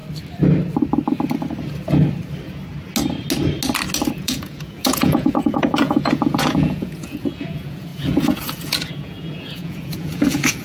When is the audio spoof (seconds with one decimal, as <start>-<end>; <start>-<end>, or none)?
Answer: 4.1-10.6